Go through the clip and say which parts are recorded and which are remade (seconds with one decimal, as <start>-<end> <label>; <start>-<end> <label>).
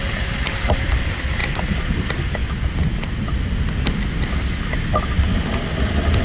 0.0-6.2 recorded